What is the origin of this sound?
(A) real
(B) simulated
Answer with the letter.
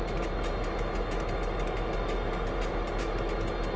A